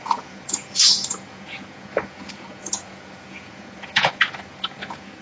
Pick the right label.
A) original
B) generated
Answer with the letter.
B